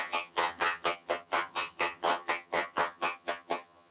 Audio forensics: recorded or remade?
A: remade